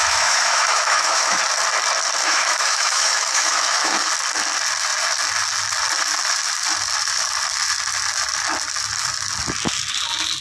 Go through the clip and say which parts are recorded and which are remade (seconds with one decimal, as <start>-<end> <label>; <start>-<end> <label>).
0.0-1.4 remade; 1.4-2.2 recorded; 2.2-4.1 remade; 4.1-10.4 recorded